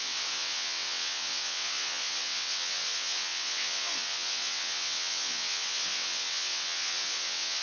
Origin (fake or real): fake